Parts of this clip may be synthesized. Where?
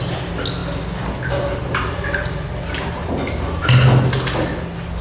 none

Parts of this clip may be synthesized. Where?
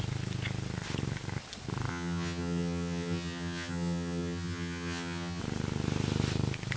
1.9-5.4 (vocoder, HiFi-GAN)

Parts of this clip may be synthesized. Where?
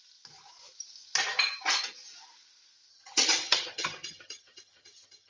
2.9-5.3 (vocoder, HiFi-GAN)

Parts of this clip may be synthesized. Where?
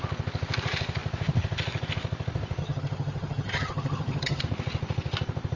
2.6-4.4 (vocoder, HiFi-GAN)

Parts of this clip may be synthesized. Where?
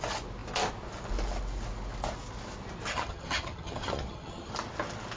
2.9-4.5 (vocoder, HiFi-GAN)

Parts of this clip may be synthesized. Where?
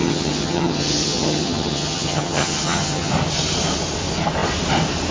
0.0-3.1 (vocoder, HiFi-GAN)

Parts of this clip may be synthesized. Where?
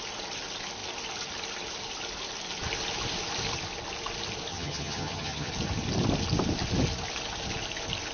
4.5-5.5 (vocoder, HiFi-GAN)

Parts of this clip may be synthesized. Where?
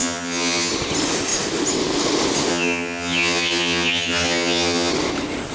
0.0-0.7 (vocoder, HiFi-GAN); 2.5-4.9